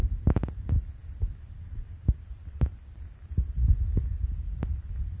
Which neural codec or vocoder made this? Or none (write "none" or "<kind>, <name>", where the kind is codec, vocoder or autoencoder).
none